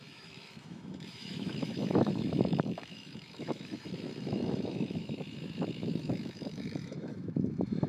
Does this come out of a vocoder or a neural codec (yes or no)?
yes